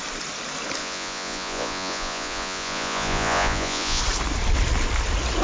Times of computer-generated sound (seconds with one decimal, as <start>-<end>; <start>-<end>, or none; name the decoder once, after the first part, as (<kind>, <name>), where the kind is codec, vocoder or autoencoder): 0.8-4.0 (vocoder, Vocos)